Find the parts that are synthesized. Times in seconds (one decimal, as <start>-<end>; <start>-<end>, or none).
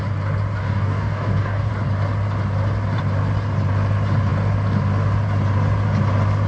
0.6-1.7